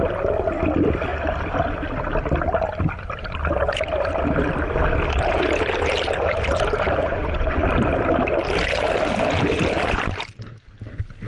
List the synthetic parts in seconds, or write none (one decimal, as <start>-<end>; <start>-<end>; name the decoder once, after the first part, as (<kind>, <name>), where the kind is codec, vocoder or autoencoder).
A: 7.0-7.7 (vocoder, Vocos)